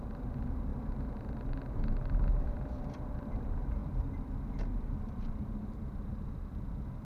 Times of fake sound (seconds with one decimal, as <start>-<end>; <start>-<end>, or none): 0.0-7.0